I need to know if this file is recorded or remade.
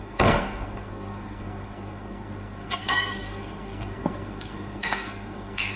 remade